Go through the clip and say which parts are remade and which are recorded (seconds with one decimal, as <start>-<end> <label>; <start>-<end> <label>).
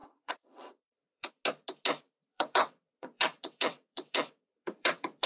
0.0-1.3 remade; 1.3-2.3 recorded; 2.3-5.3 remade